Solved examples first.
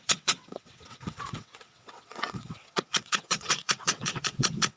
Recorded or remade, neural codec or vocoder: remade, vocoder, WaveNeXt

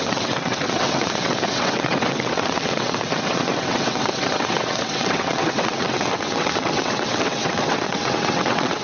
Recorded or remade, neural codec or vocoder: remade, vocoder, WaveNeXt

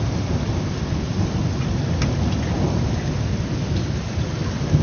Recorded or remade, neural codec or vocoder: recorded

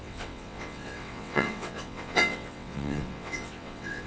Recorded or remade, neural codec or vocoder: remade, vocoder, WaveNeXt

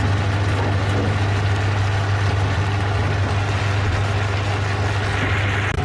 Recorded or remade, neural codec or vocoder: recorded